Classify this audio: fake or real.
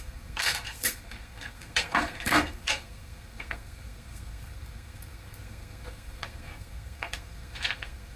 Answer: fake